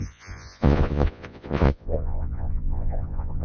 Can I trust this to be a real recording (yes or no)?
no